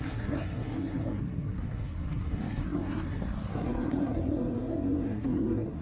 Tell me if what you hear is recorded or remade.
remade